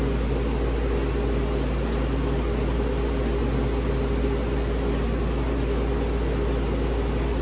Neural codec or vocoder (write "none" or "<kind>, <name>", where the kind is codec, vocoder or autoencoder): none